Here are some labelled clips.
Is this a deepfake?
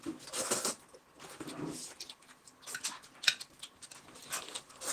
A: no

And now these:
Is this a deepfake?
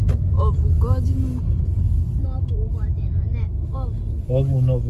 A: no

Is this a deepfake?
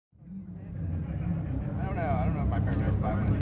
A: yes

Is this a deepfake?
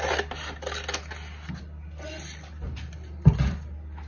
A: no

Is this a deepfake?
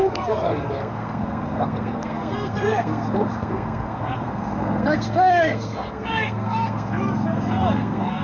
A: yes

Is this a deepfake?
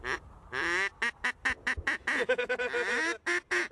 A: no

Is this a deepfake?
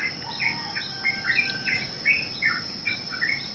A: no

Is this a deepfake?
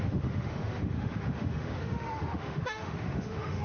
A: yes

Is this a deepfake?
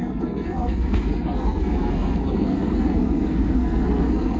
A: yes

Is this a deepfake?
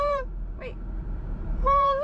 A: yes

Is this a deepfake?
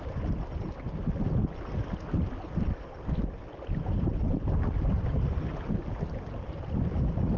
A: no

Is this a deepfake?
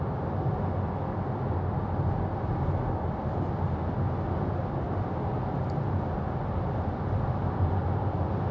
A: no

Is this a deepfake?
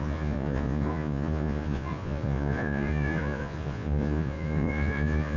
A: yes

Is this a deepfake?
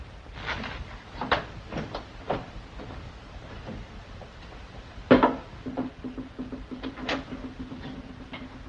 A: no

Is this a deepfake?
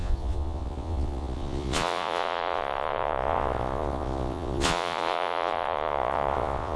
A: yes